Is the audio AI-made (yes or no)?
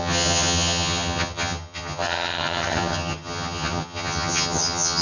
yes